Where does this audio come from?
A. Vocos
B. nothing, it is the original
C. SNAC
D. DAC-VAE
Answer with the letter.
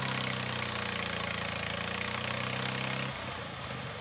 B